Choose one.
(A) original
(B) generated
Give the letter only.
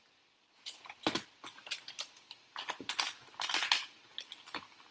A